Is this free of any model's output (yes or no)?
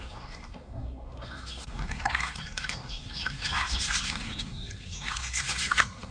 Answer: no